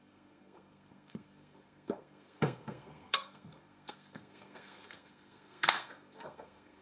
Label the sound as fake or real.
fake